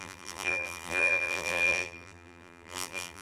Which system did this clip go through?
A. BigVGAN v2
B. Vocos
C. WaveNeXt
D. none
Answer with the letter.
A